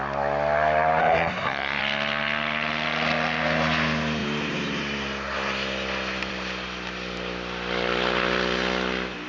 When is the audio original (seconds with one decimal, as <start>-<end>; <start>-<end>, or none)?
0.0-1.0; 1.8-9.3